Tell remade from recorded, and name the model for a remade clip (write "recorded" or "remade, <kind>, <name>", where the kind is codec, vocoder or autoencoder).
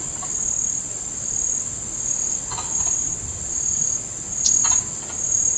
recorded